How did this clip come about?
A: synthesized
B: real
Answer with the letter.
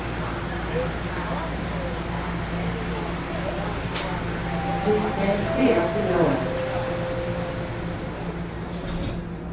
B